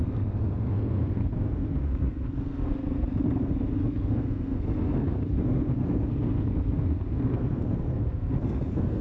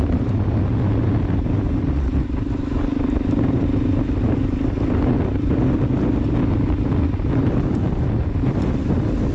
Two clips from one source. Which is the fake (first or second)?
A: first